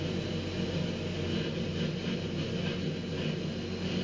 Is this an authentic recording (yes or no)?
yes